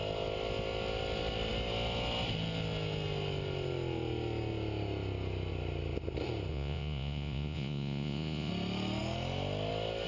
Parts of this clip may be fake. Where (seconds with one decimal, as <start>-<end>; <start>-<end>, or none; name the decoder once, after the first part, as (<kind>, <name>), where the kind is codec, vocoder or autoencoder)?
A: 6.5-8.5 (vocoder, Vocos)